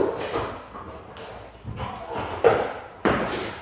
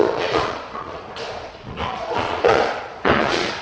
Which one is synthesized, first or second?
second